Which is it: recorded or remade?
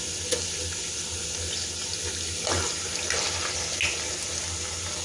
recorded